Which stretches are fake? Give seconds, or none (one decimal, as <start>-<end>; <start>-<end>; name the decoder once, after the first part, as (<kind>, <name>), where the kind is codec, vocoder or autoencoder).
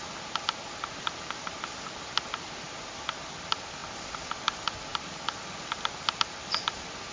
none